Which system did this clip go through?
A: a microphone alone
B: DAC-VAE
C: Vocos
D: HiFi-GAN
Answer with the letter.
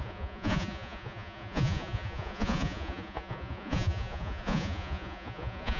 C